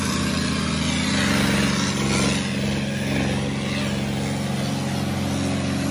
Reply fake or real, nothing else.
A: real